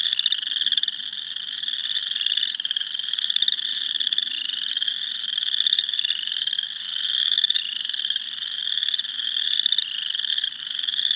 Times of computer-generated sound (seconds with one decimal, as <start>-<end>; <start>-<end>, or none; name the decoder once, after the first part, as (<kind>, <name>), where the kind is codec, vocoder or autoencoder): none